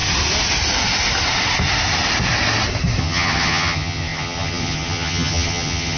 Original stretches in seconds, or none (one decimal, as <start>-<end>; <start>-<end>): 0.0-3.0